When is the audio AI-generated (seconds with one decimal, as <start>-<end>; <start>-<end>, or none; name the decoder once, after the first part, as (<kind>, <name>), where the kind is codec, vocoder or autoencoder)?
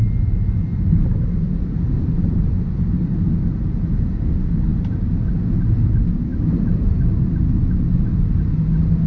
0.7-4.0 (vocoder, BigVGAN v2); 6.3-7.0